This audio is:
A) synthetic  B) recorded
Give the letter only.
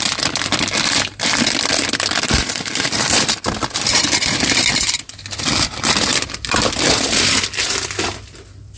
A